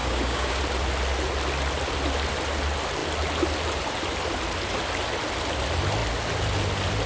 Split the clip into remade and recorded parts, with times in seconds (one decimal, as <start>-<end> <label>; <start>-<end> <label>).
0.0-0.6 remade; 0.6-7.1 recorded